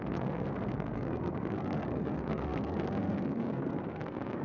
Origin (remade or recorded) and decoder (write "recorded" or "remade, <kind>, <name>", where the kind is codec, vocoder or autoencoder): remade, codec, SNAC